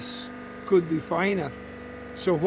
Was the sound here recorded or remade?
remade